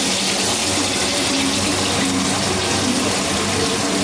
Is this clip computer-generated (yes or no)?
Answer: no